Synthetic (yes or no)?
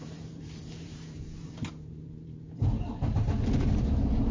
yes